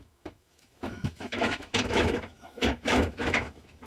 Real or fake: fake